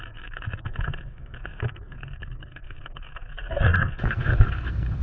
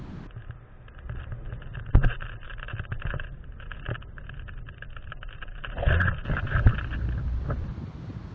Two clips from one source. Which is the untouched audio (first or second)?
second